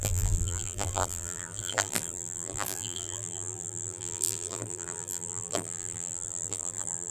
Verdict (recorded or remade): remade